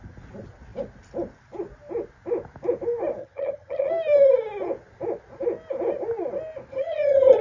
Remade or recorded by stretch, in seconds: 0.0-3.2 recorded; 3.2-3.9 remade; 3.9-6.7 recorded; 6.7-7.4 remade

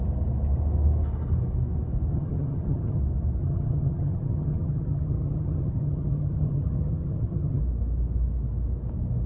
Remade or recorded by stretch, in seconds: 0.0-2.1 recorded; 2.1-3.0 remade; 3.0-3.4 recorded; 3.4-7.6 remade; 7.6-9.3 recorded

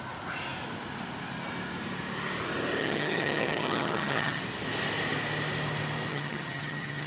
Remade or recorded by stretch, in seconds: 0.0-2.8 recorded; 2.8-4.4 remade; 4.4-6.1 recorded; 6.1-7.1 remade

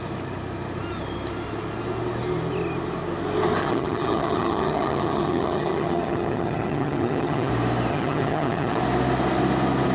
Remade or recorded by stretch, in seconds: 0.0-3.6 recorded; 3.6-7.5 remade; 7.5-7.9 recorded; 7.9-8.8 remade; 8.8-9.9 recorded

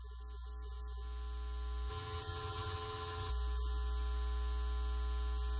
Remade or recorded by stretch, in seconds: 0.0-1.9 recorded; 1.9-3.3 remade; 3.3-5.6 recorded